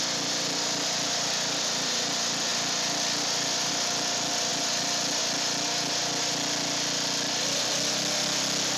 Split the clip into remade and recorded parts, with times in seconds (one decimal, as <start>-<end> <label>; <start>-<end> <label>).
0.0-8.8 recorded